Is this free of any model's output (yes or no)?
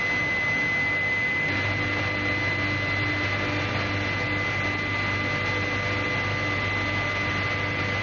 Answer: yes